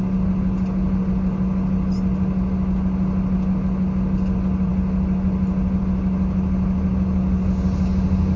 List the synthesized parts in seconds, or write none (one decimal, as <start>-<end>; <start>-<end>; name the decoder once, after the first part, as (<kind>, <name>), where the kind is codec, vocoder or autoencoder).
none